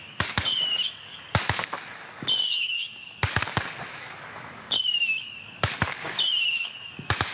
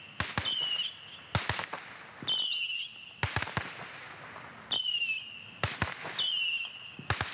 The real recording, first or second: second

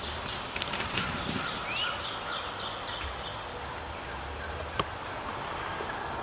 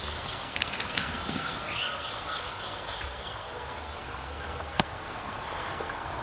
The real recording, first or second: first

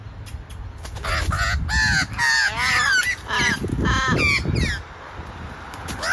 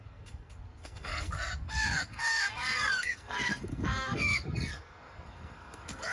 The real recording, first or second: first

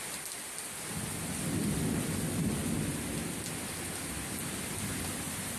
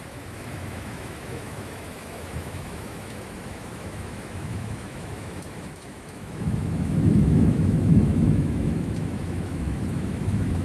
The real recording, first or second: first